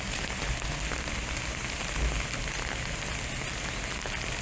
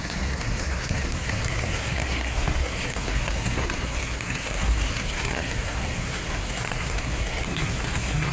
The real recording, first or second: first